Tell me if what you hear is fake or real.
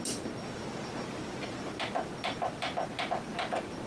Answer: real